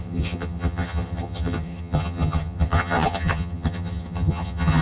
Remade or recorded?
remade